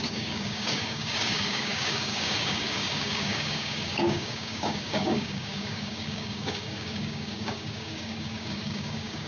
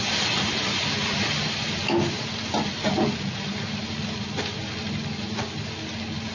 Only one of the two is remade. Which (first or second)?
first